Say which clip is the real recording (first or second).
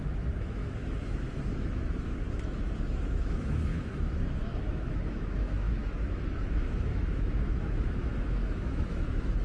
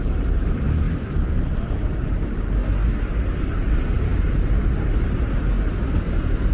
second